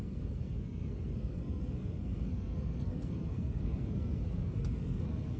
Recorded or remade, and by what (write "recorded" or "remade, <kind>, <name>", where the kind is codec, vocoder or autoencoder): remade, codec, SNAC